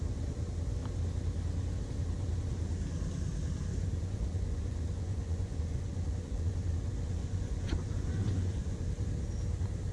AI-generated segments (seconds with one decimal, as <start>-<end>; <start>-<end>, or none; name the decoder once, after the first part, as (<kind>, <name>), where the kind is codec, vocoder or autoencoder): 3.7-6.7 (vocoder, Vocos); 7.2-8.9